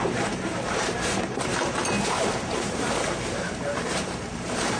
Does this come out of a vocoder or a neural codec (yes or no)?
yes